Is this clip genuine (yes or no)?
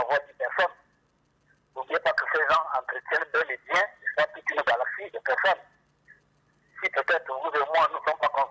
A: yes